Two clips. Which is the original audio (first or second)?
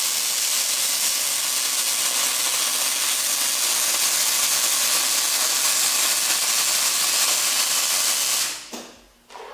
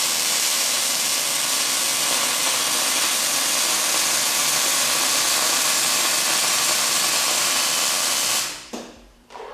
first